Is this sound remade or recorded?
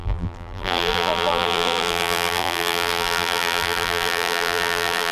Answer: remade